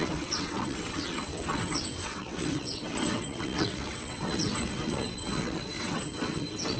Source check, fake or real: fake